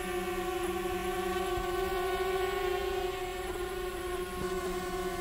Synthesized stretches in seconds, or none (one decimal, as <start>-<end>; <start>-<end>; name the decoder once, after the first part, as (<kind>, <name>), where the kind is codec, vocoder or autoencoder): none